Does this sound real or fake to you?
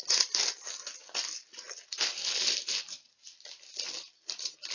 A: fake